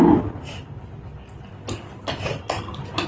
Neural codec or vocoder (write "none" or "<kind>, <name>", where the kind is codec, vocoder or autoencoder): none